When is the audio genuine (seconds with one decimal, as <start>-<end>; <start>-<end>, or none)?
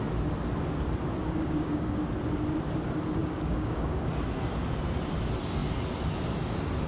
0.0-1.2; 2.0-3.2; 4.1-6.9